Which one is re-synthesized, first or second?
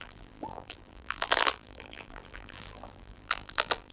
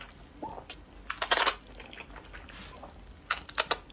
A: first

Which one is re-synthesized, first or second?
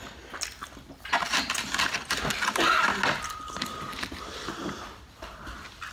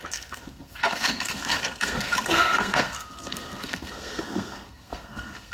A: second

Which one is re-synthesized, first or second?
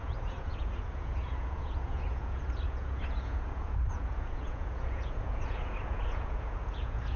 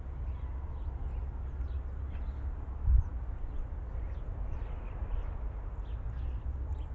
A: first